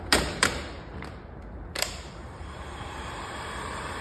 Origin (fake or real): fake